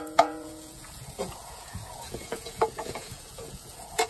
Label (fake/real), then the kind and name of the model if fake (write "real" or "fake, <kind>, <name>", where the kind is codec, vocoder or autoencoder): fake, vocoder, Vocos